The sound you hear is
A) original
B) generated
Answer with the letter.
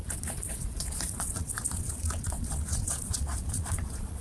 B